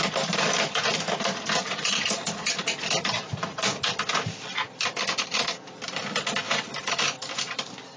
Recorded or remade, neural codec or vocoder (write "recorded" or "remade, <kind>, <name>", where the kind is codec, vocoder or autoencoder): recorded